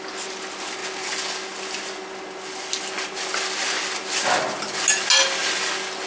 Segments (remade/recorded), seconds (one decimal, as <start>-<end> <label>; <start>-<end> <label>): 0.0-6.1 recorded